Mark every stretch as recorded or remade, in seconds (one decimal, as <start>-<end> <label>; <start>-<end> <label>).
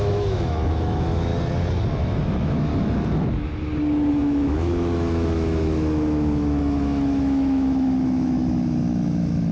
0.0-1.3 remade; 1.3-1.9 recorded; 1.9-2.7 remade; 2.7-4.1 recorded; 4.1-9.5 remade